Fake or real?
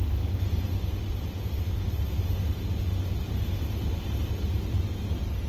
real